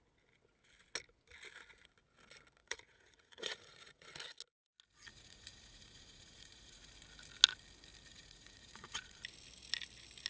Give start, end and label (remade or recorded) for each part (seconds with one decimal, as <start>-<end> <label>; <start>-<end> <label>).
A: 0.0-2.6 recorded; 2.6-4.1 remade; 4.1-5.1 recorded; 5.1-6.8 remade; 6.8-8.1 recorded; 8.1-9.2 remade; 9.2-10.3 recorded